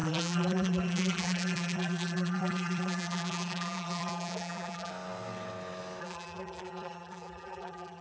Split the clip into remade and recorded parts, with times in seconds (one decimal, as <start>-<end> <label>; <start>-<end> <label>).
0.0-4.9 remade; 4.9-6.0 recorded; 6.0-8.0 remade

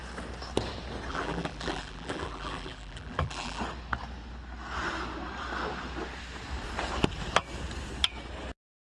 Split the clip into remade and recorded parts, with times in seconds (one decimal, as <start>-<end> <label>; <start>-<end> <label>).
0.0-1.1 recorded; 1.1-3.6 remade; 3.6-8.9 recorded

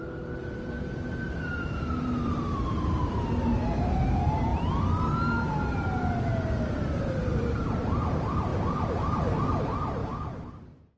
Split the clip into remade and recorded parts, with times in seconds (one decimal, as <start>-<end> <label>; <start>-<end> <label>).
0.0-4.5 remade; 4.5-6.9 recorded; 6.9-10.0 remade; 10.0-10.5 recorded; 10.5-11.0 remade